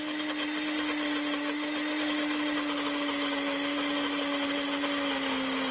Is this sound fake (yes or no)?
no